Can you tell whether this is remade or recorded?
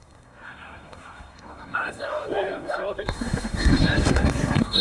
remade